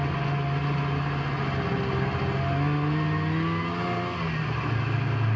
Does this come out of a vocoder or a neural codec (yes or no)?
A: no